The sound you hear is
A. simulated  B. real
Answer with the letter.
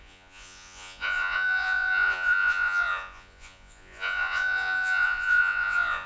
A